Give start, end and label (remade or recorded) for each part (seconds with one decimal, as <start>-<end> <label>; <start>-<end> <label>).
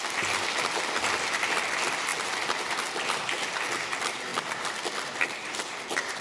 0.0-2.1 remade; 2.1-2.6 recorded; 2.6-4.3 remade; 4.3-5.6 recorded; 5.6-6.2 remade